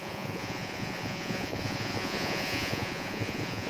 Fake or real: fake